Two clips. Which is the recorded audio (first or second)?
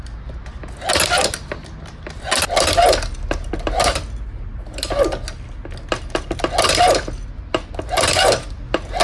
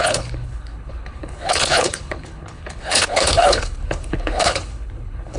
first